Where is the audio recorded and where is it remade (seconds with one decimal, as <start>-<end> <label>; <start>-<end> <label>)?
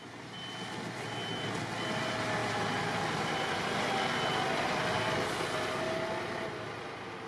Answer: 0.0-7.3 recorded